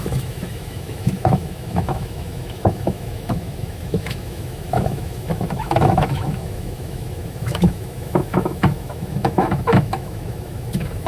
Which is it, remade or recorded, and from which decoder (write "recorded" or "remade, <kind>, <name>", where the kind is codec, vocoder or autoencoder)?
remade, autoencoder, DAC-VAE